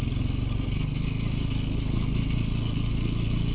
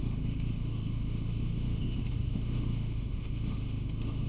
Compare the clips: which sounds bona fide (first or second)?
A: first